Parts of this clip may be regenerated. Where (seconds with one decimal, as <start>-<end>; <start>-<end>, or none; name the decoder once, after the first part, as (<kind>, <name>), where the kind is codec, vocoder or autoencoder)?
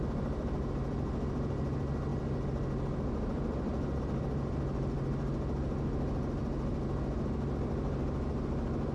none